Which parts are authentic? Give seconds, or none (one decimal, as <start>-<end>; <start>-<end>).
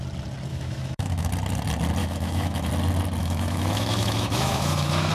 0.0-0.5; 1.3-2.0; 2.7-3.2